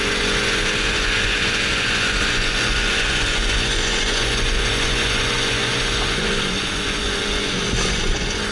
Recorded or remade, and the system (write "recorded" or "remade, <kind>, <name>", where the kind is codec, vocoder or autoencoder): remade, vocoder, Vocos